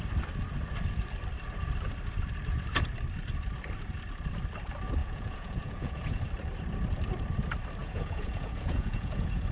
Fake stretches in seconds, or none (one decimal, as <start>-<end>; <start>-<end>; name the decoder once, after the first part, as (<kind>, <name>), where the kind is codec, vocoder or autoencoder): 5.0-6.2 (vocoder, Vocos); 7.8-9.5